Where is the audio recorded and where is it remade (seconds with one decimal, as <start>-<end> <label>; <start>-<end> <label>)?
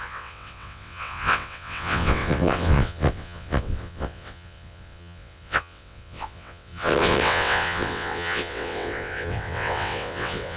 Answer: 0.0-10.6 remade